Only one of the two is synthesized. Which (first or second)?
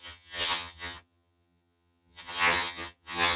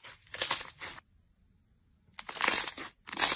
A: first